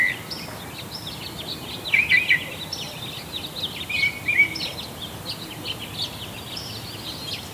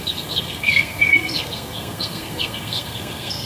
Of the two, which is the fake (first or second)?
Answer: second